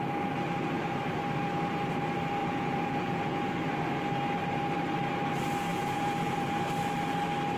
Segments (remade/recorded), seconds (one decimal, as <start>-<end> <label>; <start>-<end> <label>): 0.0-2.4 recorded; 2.4-3.5 remade; 3.5-5.7 recorded; 5.7-6.5 remade; 6.5-7.6 recorded